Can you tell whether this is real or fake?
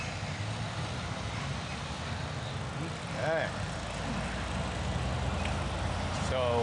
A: real